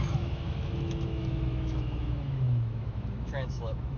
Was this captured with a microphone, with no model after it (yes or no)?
no